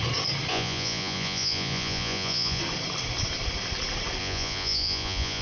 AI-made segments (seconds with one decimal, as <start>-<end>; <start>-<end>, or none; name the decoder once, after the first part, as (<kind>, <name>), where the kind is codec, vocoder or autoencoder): 0.5-2.6 (vocoder, Vocos); 4.2-5.4

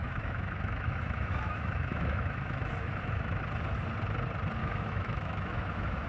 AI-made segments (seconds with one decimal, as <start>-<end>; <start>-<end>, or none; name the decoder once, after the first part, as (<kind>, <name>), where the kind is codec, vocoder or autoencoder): 0.0-3.4 (autoencoder, DAC-VAE); 4.6-6.1

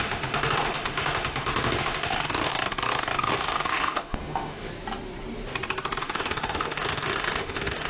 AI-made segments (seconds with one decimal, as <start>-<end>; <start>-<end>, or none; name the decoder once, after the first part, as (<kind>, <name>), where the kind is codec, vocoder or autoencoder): 0.0-2.5 (autoencoder, DAC-VAE); 3.3-4.7; 6.0-7.9

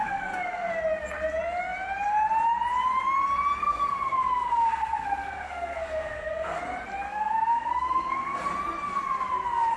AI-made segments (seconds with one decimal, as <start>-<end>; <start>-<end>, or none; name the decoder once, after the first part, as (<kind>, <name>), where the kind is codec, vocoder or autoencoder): 0.0-0.7 (codec, SNAC); 3.6-6.6; 7.1-8.4

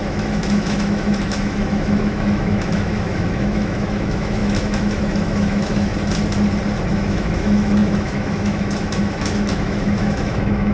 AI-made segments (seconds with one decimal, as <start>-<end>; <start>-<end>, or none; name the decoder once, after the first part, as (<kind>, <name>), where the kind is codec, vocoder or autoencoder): 0.0-5.9 (autoencoder, DAC-VAE); 6.9-10.7

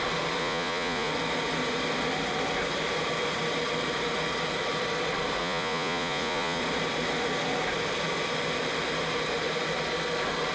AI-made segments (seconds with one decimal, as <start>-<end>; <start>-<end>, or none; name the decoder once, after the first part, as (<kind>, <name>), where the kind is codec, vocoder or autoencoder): 0.4-1.1 (vocoder, Vocos); 5.4-6.6